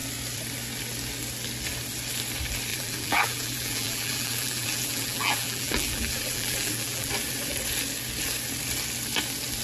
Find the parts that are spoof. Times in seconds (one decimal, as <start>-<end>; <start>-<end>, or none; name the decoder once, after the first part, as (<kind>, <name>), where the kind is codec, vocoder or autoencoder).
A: 2.7-7.1 (vocoder, BigVGAN v2)

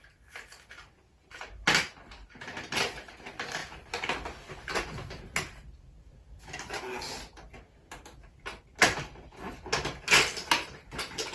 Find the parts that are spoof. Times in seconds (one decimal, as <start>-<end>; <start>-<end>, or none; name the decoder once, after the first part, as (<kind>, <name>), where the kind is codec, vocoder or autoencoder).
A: none

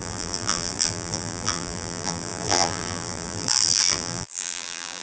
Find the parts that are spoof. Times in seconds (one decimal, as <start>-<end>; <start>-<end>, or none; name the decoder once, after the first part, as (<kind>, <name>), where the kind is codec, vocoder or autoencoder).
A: 0.0-5.0 (vocoder, BigVGAN v2)

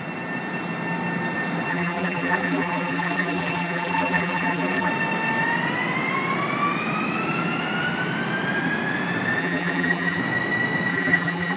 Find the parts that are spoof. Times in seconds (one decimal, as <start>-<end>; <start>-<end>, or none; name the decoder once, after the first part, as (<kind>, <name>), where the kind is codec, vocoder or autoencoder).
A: 1.7-4.9 (vocoder, BigVGAN v2); 9.4-10.2; 10.9-11.6

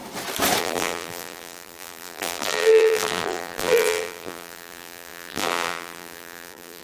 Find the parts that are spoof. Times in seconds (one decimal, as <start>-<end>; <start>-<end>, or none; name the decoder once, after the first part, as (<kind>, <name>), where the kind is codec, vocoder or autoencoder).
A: 0.6-6.8 (vocoder, BigVGAN v2)

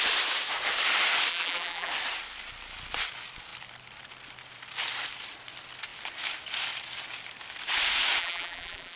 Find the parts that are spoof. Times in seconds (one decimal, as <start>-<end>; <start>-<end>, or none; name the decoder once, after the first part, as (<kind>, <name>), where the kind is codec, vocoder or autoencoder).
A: 1.3-1.9 (vocoder, BigVGAN v2); 8.2-9.0

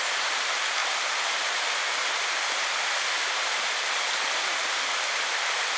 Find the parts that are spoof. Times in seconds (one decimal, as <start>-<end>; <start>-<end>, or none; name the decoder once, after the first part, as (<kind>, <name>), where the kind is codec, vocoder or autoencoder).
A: none

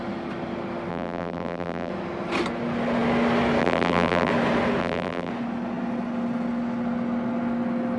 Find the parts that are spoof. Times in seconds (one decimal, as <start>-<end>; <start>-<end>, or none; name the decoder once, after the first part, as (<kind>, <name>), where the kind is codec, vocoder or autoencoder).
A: 0.9-1.9 (vocoder, BigVGAN v2); 3.6-4.3; 4.8-5.3